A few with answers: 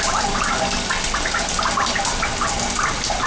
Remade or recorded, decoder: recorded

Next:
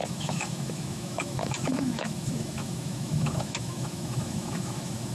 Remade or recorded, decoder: remade, autoencoder, DAC-VAE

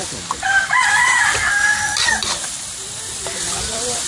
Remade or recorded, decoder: remade, vocoder, BigVGAN v2